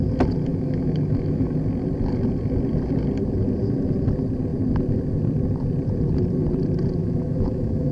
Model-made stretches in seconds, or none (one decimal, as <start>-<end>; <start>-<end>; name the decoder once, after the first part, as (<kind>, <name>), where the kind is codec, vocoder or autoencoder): 0.5-1.5 (autoencoder, DAC-VAE); 7.0-7.9